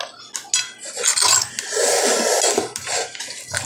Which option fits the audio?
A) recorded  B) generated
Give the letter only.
A